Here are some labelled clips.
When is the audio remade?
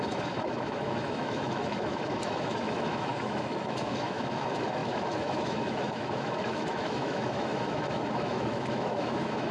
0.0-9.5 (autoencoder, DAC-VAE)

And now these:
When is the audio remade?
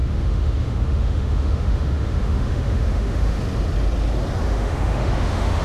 0.0-3.4 (autoencoder, DAC-VAE); 4.4-5.6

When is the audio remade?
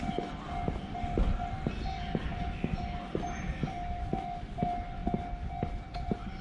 none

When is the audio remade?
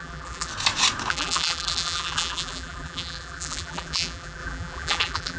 0.0-0.5 (vocoder, BigVGAN v2); 1.1-5.4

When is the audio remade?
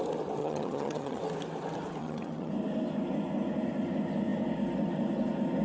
0.4-1.2 (vocoder, HiFi-GAN); 2.0-2.5